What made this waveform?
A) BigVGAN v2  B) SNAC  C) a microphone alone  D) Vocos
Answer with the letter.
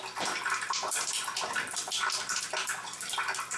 A